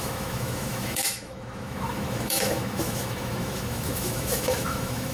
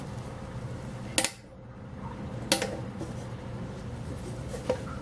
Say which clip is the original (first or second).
second